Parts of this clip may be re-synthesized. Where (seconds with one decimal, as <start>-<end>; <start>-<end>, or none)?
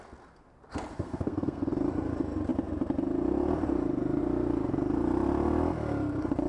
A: 0.9-1.6